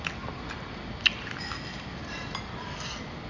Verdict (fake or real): real